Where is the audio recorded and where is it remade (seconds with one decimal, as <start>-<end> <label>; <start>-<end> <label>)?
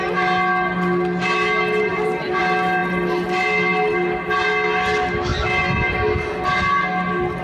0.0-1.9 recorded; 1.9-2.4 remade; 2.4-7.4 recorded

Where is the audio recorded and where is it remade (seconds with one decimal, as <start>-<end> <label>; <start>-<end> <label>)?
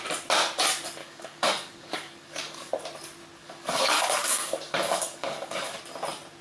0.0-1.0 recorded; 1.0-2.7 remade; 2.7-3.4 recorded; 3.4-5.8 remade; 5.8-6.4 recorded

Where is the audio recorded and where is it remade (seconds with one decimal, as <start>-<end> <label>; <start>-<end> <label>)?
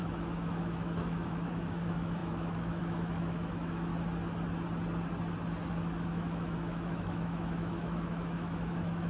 0.0-3.9 remade; 3.9-5.7 recorded; 5.7-9.1 remade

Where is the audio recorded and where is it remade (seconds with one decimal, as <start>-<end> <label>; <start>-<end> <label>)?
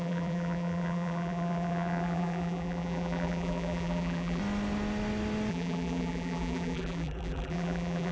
0.0-4.4 remade; 4.4-5.5 recorded; 5.5-8.1 remade